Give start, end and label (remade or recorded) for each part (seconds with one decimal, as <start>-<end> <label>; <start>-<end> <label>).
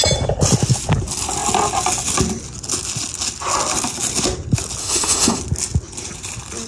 0.0-4.8 recorded; 4.8-5.4 remade; 5.4-6.7 recorded